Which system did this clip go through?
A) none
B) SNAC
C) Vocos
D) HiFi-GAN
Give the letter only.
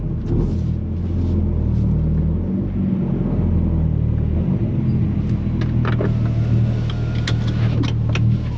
A